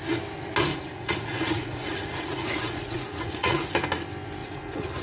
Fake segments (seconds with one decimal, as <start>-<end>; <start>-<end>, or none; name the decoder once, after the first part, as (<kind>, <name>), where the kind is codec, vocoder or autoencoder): 0.7-3.7 (vocoder, Vocos); 4.4-5.0